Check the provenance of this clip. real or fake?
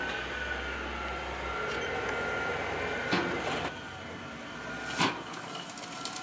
real